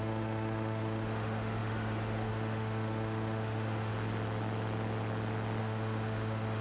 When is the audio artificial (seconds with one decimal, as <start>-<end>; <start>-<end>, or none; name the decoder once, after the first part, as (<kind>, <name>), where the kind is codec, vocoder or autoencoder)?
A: 0.0-3.9 (autoencoder, DAC-VAE); 5.6-6.6

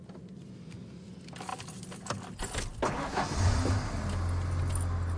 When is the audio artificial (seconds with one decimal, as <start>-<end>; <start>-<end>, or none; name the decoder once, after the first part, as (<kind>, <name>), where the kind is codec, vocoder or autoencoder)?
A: none

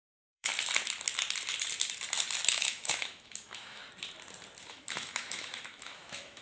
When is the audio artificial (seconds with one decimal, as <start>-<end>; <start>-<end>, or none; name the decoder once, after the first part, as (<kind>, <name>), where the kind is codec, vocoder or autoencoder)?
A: 0.0-0.5 (autoencoder, DAC-VAE); 2.5-3.8; 4.7-6.4

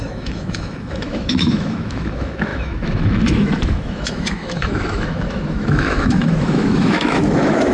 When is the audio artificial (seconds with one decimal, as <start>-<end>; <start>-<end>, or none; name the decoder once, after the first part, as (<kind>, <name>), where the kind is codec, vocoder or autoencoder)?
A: 0.0-7.7 (autoencoder, DAC-VAE)

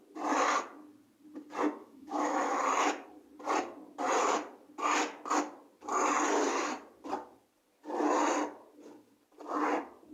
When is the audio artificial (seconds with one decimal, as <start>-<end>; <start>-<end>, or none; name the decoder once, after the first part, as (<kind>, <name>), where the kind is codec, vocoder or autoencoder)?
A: 1.8-2.6 (autoencoder, DAC-VAE)